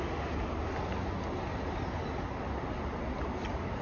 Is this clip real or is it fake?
real